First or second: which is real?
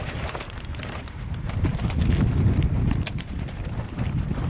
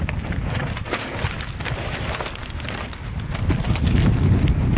second